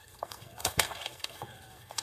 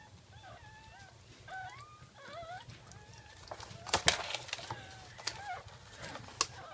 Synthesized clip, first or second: first